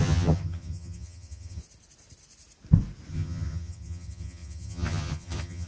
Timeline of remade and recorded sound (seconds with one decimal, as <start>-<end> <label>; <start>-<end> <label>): 0.0-1.6 remade; 1.6-3.1 recorded; 3.1-5.7 remade